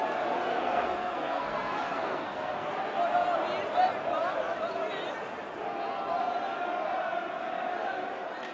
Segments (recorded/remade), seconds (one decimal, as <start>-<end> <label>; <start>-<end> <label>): 0.0-0.5 recorded; 0.5-2.7 remade; 2.7-8.5 recorded

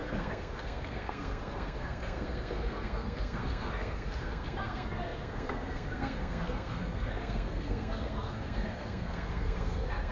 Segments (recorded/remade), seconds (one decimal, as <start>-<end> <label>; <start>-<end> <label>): 0.0-10.1 remade

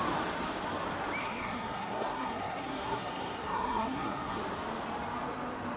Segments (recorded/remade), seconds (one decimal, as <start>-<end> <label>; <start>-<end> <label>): 0.0-1.2 recorded; 1.2-4.4 remade; 4.4-5.8 recorded

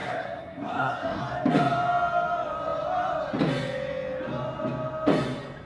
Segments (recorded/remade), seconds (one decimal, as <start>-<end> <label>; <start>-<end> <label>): 0.0-1.2 remade; 1.2-5.7 recorded

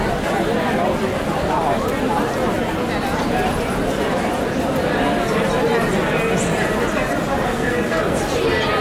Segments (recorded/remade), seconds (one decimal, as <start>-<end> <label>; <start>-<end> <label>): 0.0-7.3 recorded; 7.3-8.2 remade; 8.2-8.8 recorded

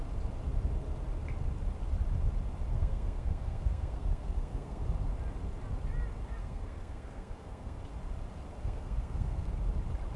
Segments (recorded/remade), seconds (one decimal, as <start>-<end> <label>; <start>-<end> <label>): 0.0-2.7 recorded; 2.7-4.8 remade; 4.8-6.4 recorded; 6.4-7.8 remade; 7.8-8.6 recorded; 8.6-9.5 remade; 9.5-10.2 recorded